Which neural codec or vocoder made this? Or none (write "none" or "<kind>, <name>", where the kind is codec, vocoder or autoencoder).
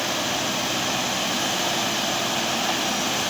none